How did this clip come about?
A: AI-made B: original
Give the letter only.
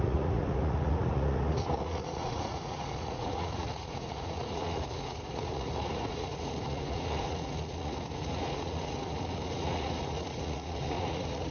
A